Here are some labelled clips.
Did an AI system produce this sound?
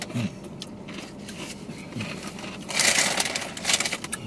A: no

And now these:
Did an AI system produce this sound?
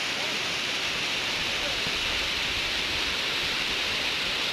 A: no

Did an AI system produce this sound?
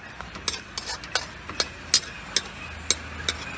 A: no